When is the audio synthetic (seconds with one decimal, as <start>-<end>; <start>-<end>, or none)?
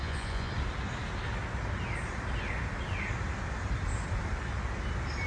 0.0-0.5